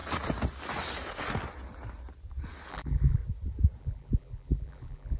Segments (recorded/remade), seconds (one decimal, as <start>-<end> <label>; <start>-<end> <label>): 0.0-2.7 recorded; 2.7-3.2 remade; 3.2-3.8 recorded; 3.8-5.2 remade